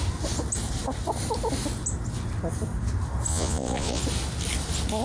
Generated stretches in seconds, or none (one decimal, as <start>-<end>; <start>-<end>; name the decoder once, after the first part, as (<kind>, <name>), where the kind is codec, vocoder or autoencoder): 3.3-4.0 (vocoder, Vocos)